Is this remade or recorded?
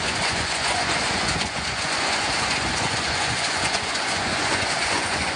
remade